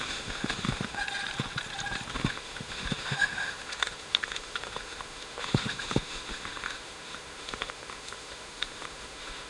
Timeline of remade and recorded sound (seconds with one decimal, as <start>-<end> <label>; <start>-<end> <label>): 0.0-1.0 remade; 1.0-2.1 recorded; 2.1-9.5 remade